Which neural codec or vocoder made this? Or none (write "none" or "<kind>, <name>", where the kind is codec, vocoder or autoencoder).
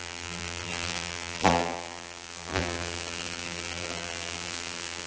vocoder, BigVGAN v2